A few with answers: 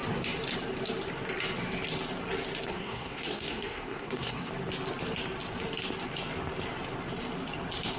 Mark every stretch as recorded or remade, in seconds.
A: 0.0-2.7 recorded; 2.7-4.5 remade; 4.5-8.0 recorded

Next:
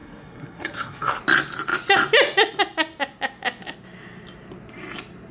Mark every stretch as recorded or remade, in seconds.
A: 0.0-1.2 remade; 1.2-5.3 recorded

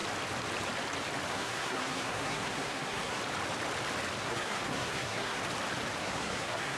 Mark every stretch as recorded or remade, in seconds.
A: 0.0-1.3 recorded; 1.3-3.2 remade; 3.2-4.2 recorded; 4.2-5.4 remade; 5.4-6.0 recorded; 6.0-6.8 remade

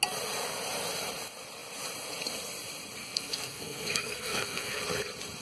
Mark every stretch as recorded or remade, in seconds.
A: 0.0-3.0 recorded; 3.0-4.8 remade; 4.8-5.4 recorded

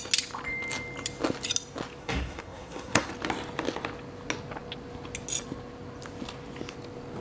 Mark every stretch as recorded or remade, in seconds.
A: 0.0-2.0 recorded; 2.0-3.1 remade; 3.1-7.2 recorded

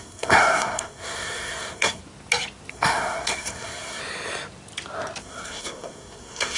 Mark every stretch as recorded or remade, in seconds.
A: 0.0-2.0 remade; 2.0-2.7 recorded; 2.7-4.0 remade; 4.0-5.2 recorded; 5.2-6.6 remade